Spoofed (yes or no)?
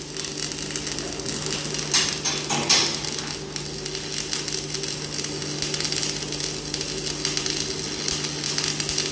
no